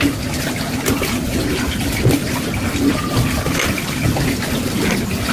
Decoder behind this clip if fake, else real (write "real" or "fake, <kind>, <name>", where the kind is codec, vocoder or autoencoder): real